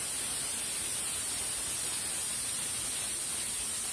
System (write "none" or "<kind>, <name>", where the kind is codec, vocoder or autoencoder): none